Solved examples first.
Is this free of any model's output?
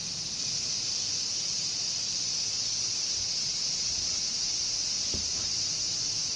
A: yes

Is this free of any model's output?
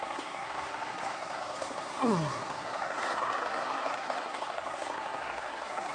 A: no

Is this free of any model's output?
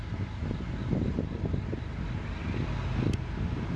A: yes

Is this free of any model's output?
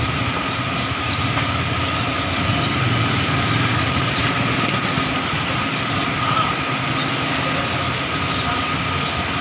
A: yes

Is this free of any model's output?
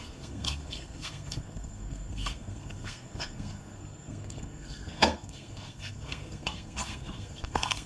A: no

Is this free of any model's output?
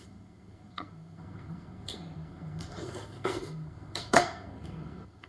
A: no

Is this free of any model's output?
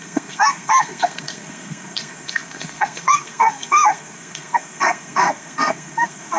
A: no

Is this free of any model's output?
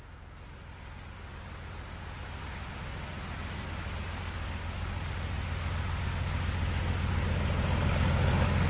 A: yes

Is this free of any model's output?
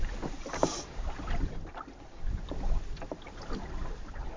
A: yes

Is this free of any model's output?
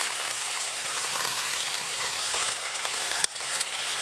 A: no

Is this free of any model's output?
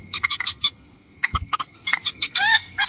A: no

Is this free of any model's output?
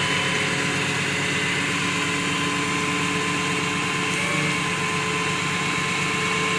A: yes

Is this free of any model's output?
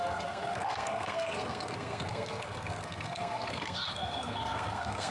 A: no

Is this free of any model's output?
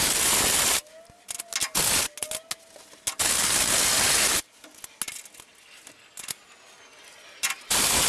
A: yes